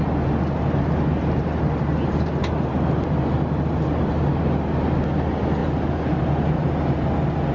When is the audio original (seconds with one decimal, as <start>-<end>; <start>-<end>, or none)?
0.0-7.5